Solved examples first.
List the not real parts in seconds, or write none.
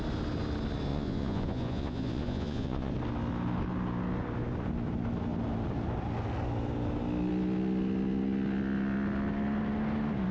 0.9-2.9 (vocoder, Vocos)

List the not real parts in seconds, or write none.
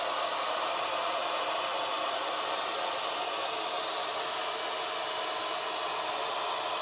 none